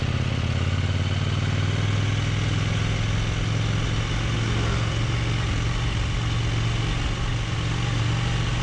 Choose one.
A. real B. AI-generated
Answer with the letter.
A